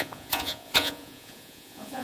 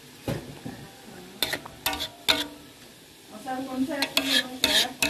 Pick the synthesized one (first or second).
first